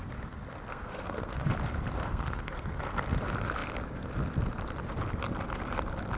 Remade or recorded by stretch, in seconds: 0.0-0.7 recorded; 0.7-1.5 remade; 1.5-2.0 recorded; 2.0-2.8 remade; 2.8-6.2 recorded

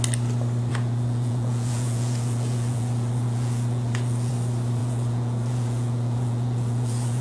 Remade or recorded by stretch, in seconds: 0.0-0.7 recorded; 0.7-4.3 remade; 4.3-4.8 recorded; 4.8-7.2 remade

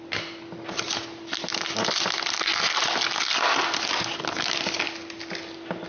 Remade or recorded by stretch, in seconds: 0.0-5.9 recorded

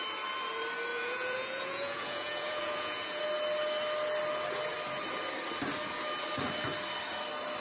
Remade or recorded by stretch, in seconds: 0.0-0.9 recorded; 0.9-3.2 remade; 3.2-7.6 recorded

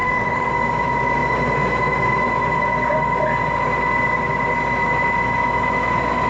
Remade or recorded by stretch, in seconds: 0.0-0.5 remade; 0.5-6.3 recorded